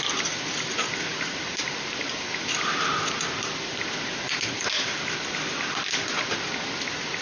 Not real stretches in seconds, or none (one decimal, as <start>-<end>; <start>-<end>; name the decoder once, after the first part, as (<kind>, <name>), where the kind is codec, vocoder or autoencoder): none